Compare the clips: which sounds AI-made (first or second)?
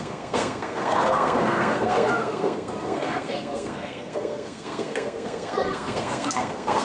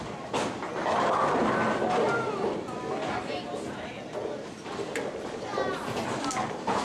first